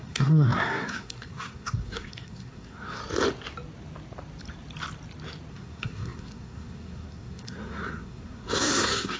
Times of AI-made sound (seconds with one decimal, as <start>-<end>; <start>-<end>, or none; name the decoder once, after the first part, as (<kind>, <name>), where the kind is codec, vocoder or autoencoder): 0.0-3.0 (codec, SNAC); 5.5-9.2